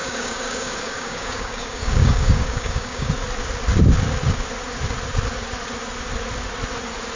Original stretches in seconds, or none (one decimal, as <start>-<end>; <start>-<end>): 3.1-7.2